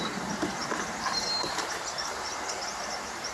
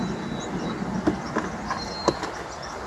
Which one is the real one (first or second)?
second